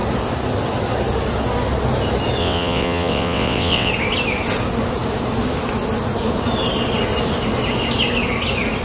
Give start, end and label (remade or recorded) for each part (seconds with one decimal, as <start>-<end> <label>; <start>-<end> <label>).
0.0-2.4 recorded; 2.4-3.9 remade; 3.9-8.8 recorded